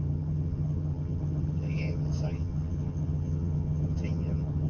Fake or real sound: fake